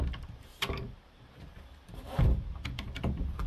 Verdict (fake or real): fake